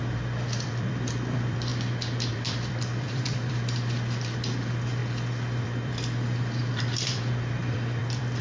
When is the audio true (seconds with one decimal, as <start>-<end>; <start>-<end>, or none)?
1.7-2.3; 5.0-5.6